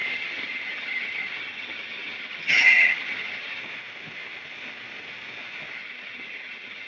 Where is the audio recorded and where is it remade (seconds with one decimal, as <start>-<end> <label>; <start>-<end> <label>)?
0.0-3.6 remade; 3.6-5.8 recorded; 5.8-6.9 remade

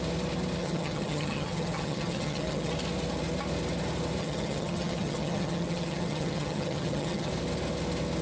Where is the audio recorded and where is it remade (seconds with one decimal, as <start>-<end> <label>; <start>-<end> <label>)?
0.0-0.6 recorded; 0.6-2.7 remade; 2.7-4.2 recorded; 4.2-7.3 remade; 7.3-8.2 recorded